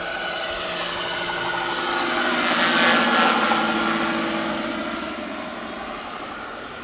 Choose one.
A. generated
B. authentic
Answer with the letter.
B